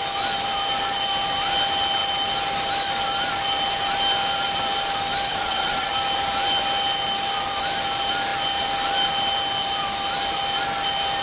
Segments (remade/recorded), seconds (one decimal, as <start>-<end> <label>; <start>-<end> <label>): 0.0-5.3 recorded; 5.3-5.9 remade; 5.9-11.2 recorded